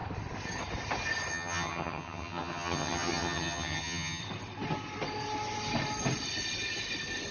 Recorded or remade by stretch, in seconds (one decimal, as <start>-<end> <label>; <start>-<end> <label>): 0.0-1.3 recorded; 1.3-4.2 remade; 4.2-7.3 recorded